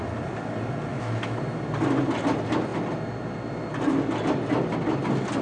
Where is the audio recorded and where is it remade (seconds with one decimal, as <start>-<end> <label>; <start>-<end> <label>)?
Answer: 0.0-0.9 recorded; 0.9-1.4 remade; 1.4-5.4 recorded